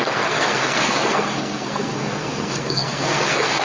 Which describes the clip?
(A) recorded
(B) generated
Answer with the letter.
B